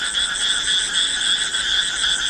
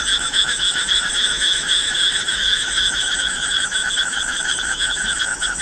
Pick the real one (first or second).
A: first